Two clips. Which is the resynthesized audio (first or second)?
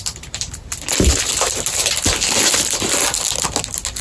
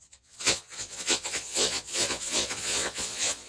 second